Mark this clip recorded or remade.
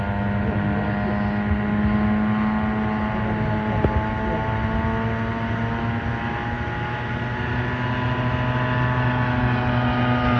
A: recorded